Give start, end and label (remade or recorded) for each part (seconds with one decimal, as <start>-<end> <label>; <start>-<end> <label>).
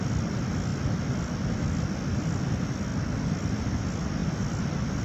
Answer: 0.0-5.0 recorded